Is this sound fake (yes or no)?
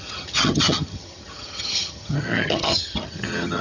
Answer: yes